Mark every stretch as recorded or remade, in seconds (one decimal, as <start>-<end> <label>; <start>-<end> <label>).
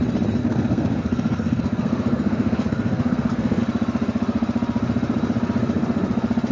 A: 0.0-0.4 recorded; 0.4-3.6 remade; 3.6-6.5 recorded